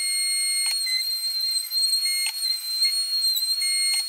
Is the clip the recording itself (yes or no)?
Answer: yes